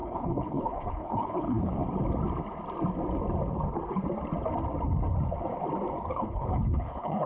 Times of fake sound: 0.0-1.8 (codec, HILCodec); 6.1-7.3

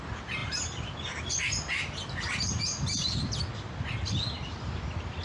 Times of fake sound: none

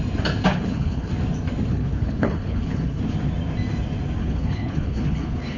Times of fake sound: 0.5-1.1 (codec, HILCodec); 1.7-3.0; 4.2-5.6

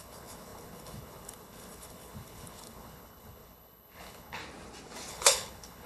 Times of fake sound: 0.0-4.4 (codec, HILCodec); 5.1-5.9